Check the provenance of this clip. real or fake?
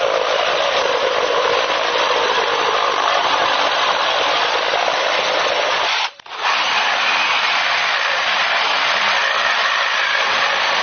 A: fake